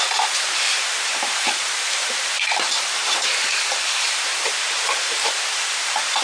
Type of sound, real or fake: fake